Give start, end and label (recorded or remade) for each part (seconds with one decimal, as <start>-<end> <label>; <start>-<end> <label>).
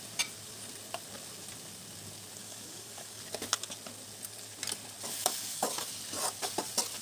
0.0-2.4 recorded; 2.4-3.2 remade; 3.2-5.2 recorded; 5.2-5.8 remade; 5.8-7.0 recorded